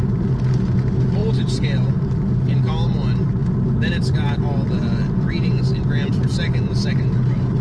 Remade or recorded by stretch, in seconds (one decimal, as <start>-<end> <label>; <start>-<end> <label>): 0.0-7.6 recorded

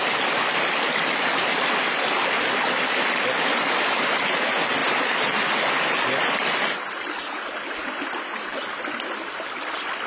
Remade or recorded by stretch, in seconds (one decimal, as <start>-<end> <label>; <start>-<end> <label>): 0.0-10.1 recorded

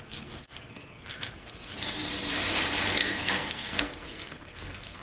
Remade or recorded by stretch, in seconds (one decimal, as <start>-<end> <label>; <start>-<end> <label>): 0.0-2.0 remade; 2.0-3.0 recorded; 3.0-5.0 remade

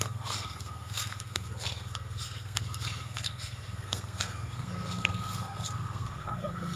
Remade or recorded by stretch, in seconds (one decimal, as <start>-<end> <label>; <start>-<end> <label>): 0.0-6.8 remade